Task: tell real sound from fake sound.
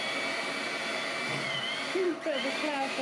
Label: real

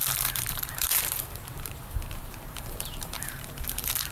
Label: fake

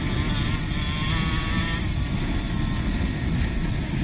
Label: real